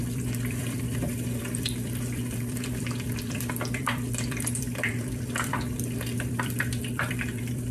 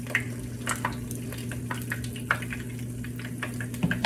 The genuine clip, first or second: second